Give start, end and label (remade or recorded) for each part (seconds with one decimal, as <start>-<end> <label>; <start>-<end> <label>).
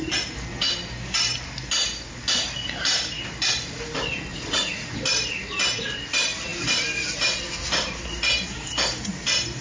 0.0-4.3 recorded; 4.3-5.0 remade; 5.0-9.6 recorded